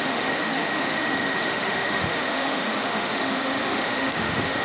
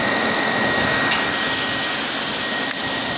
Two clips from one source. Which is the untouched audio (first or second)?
second